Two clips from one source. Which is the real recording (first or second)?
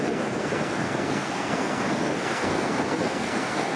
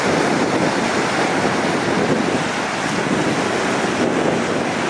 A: second